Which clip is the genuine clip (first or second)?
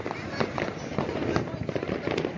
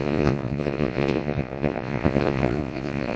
first